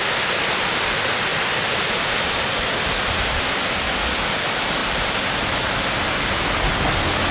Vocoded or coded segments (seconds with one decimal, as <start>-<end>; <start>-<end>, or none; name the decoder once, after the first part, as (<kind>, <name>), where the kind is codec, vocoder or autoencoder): 1.3-2.1 (vocoder, BigVGAN v2); 4.8-5.5